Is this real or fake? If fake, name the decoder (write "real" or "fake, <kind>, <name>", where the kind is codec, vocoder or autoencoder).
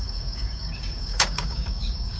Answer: fake, codec, DAC